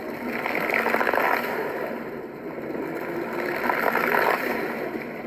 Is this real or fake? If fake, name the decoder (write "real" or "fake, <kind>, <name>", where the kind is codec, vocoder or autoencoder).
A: real